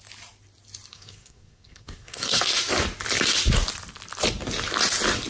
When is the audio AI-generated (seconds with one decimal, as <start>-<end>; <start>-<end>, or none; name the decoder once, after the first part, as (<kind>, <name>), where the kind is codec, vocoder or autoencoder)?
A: 0.9-2.4 (codec, SNAC)